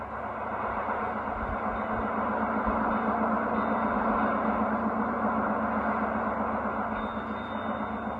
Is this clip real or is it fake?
real